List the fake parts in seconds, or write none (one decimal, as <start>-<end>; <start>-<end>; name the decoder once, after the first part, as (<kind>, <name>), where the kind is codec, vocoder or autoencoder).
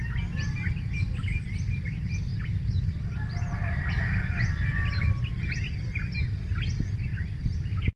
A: none